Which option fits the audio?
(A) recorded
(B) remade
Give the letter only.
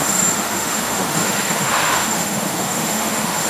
B